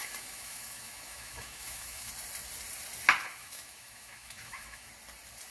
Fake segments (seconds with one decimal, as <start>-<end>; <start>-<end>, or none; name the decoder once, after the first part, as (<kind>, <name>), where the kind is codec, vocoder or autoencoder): 0.0-2.1 (autoencoder, DAC-VAE); 3.4-4.9

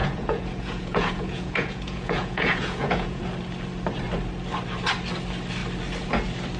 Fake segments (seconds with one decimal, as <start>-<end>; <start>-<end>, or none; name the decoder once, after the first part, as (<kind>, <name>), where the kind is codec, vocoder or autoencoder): 0.0-3.2 (vocoder, Vocos)

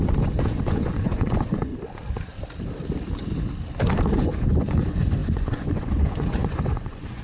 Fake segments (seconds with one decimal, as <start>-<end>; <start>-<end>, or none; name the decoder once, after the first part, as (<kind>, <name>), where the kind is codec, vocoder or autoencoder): 0.0-1.7 (vocoder, Vocos); 4.1-7.2

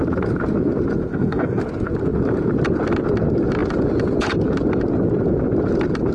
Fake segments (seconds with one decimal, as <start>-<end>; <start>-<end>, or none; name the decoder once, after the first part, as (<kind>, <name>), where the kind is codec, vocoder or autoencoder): 1.1-1.6 (codec, SNAC)